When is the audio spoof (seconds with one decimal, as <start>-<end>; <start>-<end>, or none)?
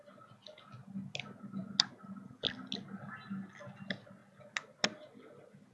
none